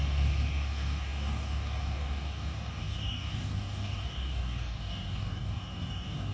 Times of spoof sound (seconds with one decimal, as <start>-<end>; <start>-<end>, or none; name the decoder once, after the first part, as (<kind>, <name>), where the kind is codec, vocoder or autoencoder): 0.0-6.3 (codec, DAC)